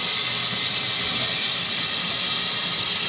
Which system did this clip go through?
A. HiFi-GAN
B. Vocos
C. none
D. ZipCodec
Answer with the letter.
C